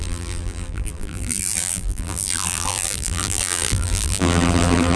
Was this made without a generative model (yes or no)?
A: no